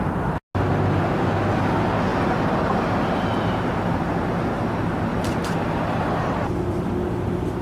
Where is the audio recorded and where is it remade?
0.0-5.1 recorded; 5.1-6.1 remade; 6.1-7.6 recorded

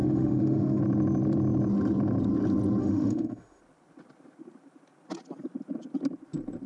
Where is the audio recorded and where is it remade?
0.0-0.8 remade; 0.8-2.8 recorded; 2.8-3.6 remade; 3.6-6.7 recorded

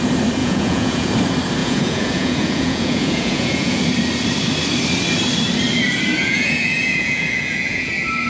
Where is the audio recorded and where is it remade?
0.0-0.4 recorded; 0.4-1.1 remade; 1.1-1.6 recorded; 1.6-3.8 remade; 3.8-6.2 recorded; 6.2-7.9 remade; 7.9-8.3 recorded

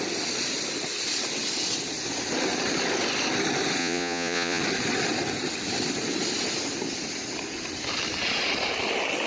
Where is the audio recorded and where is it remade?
0.0-3.8 recorded; 3.8-4.6 remade; 4.6-9.3 recorded